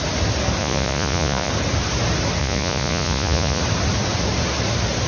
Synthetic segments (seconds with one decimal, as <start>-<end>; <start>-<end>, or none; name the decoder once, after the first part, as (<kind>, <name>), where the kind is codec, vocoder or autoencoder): 0.6-1.5 (vocoder, Vocos); 2.4-3.6

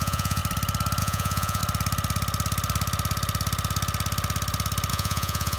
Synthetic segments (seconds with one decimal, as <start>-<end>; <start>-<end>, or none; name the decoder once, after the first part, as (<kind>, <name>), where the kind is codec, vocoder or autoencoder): 0.0-0.4 (vocoder, Vocos); 1.0-1.6; 4.9-5.6

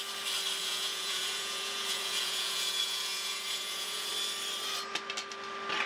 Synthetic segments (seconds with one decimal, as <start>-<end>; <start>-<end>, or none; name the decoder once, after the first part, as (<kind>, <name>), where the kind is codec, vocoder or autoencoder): 0.6-4.1 (vocoder, Vocos)

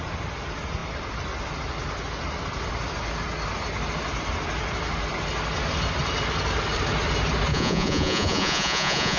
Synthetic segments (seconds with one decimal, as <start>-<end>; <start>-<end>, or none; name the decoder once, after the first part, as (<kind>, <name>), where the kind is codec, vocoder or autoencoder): 7.5-9.2 (vocoder, Vocos)

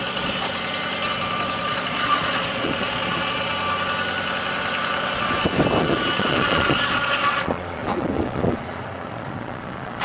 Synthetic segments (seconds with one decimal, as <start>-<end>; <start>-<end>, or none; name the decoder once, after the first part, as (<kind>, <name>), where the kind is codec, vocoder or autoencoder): 0.0-0.5 (vocoder, Vocos); 1.6-3.5; 5.8-10.0

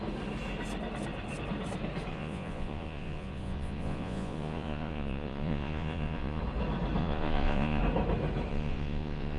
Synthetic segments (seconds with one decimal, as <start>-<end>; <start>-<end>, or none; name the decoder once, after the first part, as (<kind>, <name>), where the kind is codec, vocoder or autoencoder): 2.1-6.4 (vocoder, Vocos); 7.0-7.8; 8.5-9.4

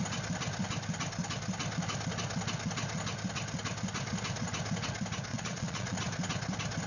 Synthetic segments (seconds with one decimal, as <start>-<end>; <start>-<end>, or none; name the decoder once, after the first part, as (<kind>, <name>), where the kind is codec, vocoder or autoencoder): 5.3-6.0 (vocoder, Vocos)

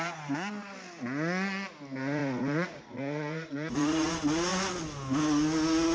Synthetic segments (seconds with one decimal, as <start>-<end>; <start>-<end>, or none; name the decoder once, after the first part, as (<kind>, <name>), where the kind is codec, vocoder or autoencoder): 2.2-4.1 (vocoder, Vocos)